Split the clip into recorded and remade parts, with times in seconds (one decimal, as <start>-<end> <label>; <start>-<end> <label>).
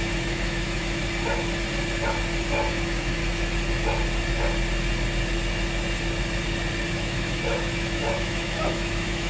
0.0-1.0 remade; 1.0-2.7 recorded; 2.7-3.2 remade; 3.2-6.9 recorded; 6.9-9.3 remade